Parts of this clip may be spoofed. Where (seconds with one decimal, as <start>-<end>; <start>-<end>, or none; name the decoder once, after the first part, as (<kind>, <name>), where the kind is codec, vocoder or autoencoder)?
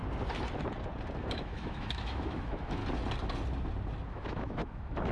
1.2-2.8 (autoencoder, DAC-VAE); 4.1-5.1